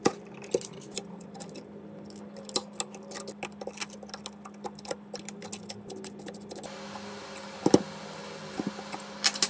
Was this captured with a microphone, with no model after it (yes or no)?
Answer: yes